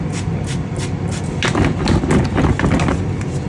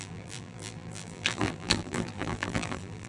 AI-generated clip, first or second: second